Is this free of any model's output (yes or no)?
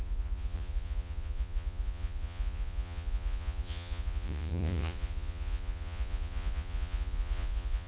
no